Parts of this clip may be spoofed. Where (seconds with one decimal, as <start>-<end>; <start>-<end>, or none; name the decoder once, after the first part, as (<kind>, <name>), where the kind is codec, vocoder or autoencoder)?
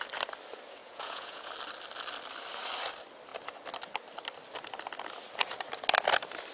0.8-1.5 (vocoder, Vocos)